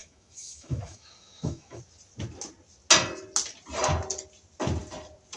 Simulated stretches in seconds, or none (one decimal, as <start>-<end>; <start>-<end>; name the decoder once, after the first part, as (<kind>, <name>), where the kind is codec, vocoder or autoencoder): 0.0-1.8 (autoencoder, DAC-VAE)